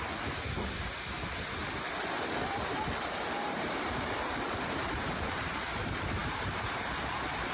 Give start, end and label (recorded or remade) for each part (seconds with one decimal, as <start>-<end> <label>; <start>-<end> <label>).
0.0-1.6 recorded; 1.6-5.5 remade; 5.5-6.2 recorded; 6.2-6.9 remade; 6.9-7.5 recorded